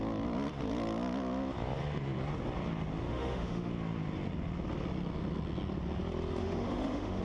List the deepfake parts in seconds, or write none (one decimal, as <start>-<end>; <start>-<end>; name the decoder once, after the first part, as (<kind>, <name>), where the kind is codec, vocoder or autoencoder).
3.1-3.7 (autoencoder, DAC-VAE); 6.4-7.2